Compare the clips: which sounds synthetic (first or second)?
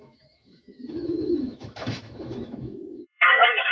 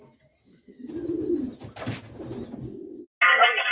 first